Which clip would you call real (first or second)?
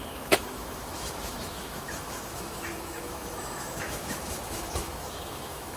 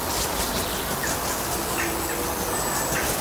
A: second